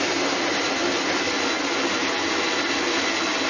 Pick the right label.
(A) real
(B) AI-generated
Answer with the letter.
A